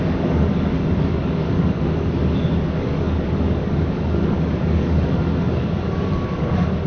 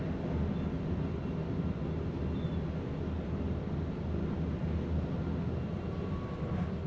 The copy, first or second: first